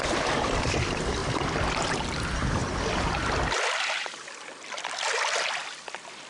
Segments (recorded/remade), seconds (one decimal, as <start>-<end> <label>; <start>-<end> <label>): 0.0-6.3 recorded